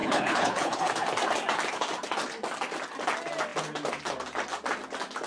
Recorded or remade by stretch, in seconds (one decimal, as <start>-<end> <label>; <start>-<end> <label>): 0.0-0.9 remade; 0.9-5.3 recorded